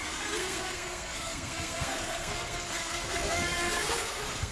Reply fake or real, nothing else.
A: fake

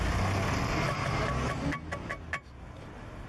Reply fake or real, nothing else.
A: real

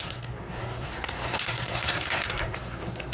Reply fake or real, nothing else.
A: fake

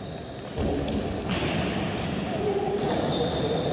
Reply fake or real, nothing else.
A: real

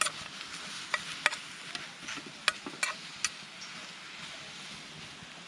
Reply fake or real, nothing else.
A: real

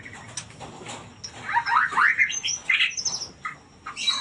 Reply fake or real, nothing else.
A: real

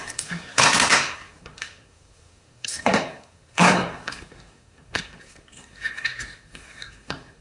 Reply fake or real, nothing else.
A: fake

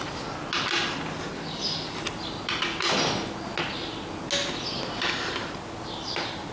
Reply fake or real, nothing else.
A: real